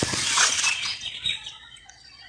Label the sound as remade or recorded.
remade